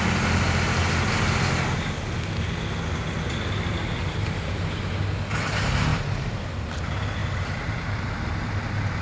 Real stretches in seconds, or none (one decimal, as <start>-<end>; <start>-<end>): 0.0-4.0; 4.9-5.9; 6.5-7.2; 8.0-9.0